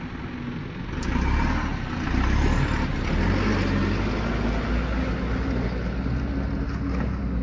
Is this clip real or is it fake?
real